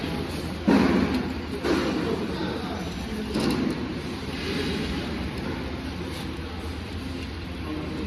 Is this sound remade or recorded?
recorded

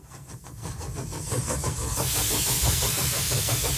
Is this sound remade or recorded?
remade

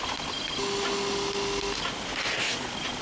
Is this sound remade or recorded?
recorded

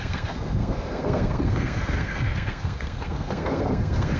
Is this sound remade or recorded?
remade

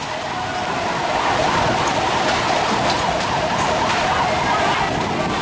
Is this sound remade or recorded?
recorded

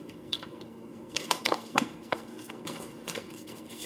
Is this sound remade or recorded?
remade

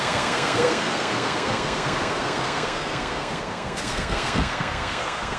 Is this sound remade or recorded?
remade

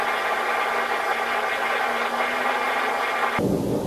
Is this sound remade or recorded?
recorded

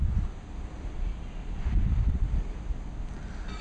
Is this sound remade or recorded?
recorded